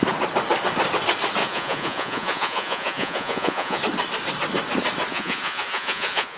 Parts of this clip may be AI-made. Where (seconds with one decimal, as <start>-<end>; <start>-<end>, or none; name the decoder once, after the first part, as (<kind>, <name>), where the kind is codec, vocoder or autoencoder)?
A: 1.4-3.8 (vocoder, Vocos); 5.1-6.4